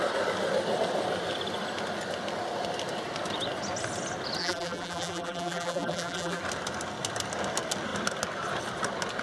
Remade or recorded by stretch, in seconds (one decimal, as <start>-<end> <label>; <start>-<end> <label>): 0.0-4.4 recorded; 4.4-6.4 remade; 6.4-9.2 recorded